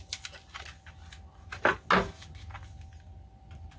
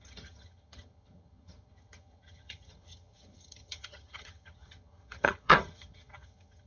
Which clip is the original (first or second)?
first